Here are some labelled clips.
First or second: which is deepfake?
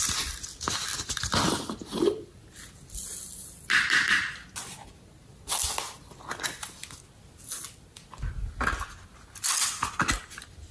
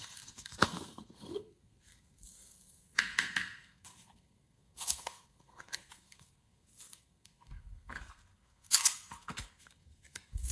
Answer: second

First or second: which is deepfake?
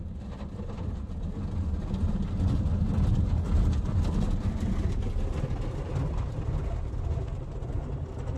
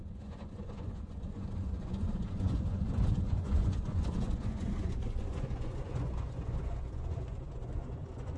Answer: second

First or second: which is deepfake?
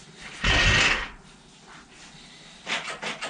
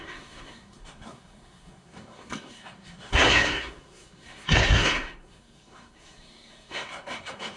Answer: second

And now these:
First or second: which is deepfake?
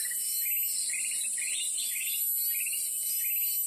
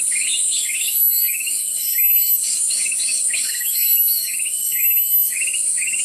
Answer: second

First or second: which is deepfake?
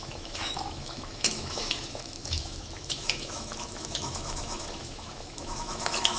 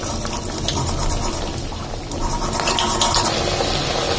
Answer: first